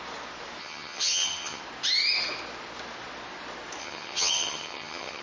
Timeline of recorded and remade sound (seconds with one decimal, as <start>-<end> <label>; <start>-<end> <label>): 0.0-0.6 recorded; 0.6-1.6 remade; 1.6-3.8 recorded; 3.8-5.2 remade